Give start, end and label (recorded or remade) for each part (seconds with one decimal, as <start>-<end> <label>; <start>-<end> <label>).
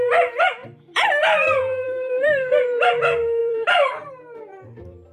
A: 0.0-0.6 recorded; 0.6-2.9 remade; 2.9-3.4 recorded; 3.4-4.1 remade; 4.1-5.1 recorded